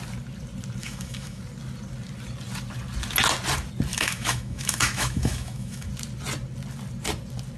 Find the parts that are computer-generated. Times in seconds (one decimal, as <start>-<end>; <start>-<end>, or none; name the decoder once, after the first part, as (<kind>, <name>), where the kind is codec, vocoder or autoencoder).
0.8-1.4 (autoencoder, DAC-VAE); 3.9-5.9